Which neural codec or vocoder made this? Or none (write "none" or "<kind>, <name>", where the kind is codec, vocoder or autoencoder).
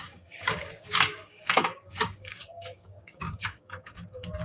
codec, DAC